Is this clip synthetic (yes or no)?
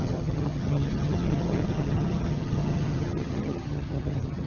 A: yes